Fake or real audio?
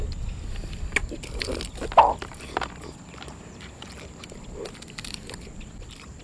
real